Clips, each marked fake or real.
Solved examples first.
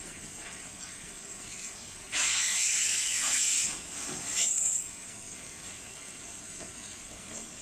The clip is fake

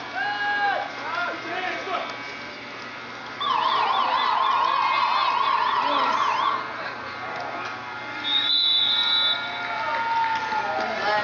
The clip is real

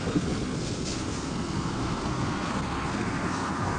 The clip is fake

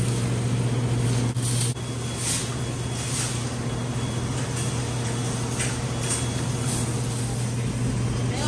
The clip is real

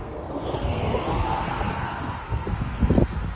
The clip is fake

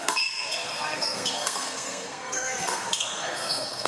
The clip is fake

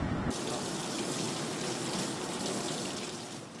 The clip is real